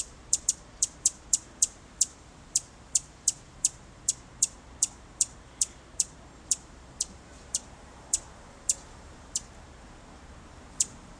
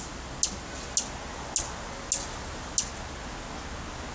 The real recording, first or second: second